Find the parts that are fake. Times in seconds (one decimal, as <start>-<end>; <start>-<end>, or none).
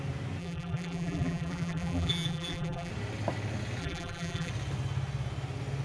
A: 0.4-2.9; 3.8-4.5